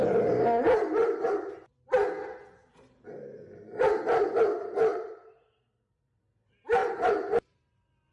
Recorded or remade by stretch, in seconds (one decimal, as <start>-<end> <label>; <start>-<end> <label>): 0.0-4.9 recorded; 4.9-6.2 remade; 6.2-6.8 recorded; 6.8-7.6 remade; 7.6-8.1 recorded